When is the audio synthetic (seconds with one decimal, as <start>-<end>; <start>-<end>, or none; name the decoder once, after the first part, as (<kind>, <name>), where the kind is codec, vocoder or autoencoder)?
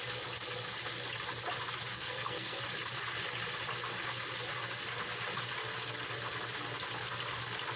1.9-2.6 (codec, SNAC)